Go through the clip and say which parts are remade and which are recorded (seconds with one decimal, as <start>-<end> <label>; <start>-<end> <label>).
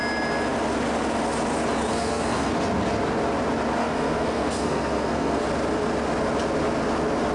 0.0-1.9 recorded; 1.9-2.5 remade; 2.5-3.8 recorded; 3.8-5.4 remade; 5.4-7.3 recorded